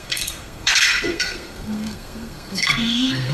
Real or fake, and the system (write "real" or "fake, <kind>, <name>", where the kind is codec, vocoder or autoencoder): fake, codec, SNAC